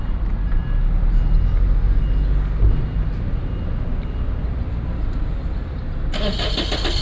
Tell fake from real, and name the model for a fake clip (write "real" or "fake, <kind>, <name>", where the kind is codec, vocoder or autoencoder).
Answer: real